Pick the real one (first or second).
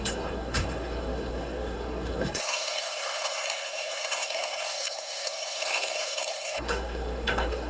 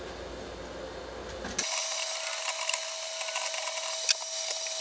second